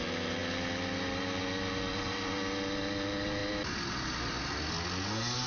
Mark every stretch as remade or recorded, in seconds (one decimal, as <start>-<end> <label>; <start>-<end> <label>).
0.0-5.5 recorded